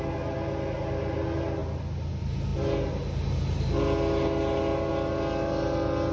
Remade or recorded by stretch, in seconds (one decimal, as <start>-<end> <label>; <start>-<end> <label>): 0.0-6.1 recorded